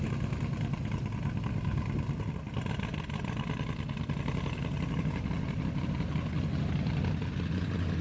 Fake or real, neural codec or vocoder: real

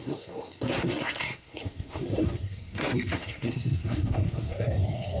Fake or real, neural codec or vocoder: fake, codec, SNAC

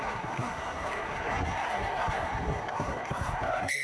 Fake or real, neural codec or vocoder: fake, codec, SNAC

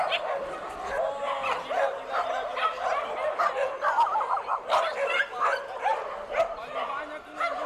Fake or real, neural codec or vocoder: real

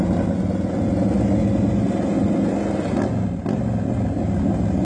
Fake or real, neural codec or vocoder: real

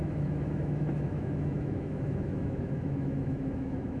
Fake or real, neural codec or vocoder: fake, autoencoder, DAC-VAE